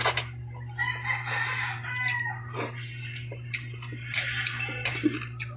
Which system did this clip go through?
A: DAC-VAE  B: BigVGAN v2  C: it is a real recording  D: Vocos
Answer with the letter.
C